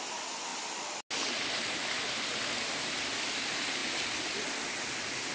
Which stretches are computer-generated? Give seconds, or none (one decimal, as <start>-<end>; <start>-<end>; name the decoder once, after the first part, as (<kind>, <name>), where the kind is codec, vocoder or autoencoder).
none